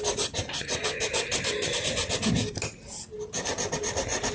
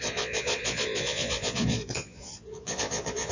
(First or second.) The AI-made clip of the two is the second